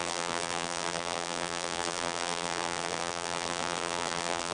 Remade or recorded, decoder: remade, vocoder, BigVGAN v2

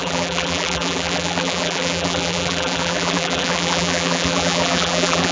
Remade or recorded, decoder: remade, vocoder, BigVGAN v2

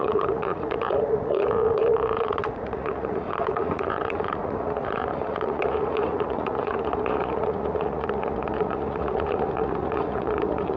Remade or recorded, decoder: remade, vocoder, Vocos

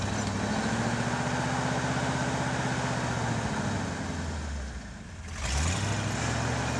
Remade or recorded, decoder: recorded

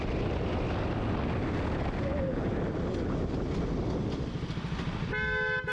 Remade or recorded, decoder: recorded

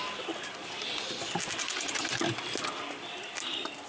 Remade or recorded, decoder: recorded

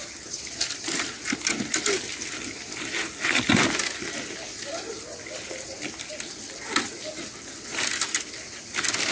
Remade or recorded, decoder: recorded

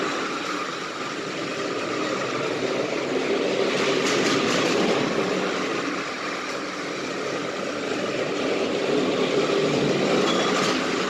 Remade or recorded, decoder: recorded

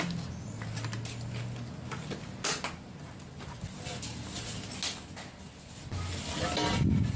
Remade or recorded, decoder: recorded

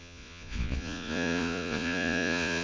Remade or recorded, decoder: remade, vocoder, Vocos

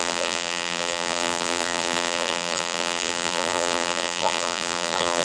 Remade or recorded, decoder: remade, vocoder, BigVGAN v2